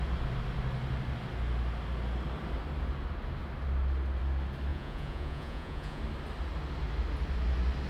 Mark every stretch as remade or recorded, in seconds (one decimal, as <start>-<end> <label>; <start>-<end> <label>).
0.0-4.7 recorded; 4.7-6.0 remade; 6.0-7.9 recorded